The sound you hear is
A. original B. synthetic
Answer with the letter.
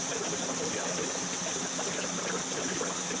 A